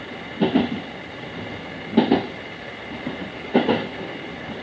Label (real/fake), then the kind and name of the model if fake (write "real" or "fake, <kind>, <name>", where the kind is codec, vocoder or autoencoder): real